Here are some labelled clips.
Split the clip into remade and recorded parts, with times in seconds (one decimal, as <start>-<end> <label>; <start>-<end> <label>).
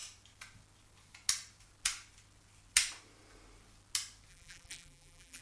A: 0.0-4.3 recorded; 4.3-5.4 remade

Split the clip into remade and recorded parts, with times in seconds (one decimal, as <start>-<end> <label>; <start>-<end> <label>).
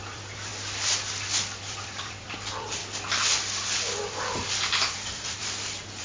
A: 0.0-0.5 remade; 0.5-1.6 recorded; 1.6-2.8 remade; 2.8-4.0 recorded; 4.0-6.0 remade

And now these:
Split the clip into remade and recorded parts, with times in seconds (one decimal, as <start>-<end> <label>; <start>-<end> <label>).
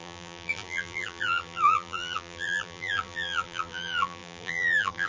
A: 0.0-5.1 remade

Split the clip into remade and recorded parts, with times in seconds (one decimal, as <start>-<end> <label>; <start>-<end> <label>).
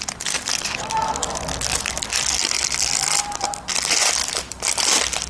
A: 0.0-4.2 recorded; 4.2-4.8 remade; 4.8-5.3 recorded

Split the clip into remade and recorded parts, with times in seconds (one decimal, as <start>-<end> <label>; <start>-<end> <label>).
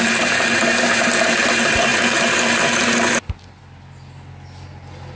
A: 0.0-5.2 recorded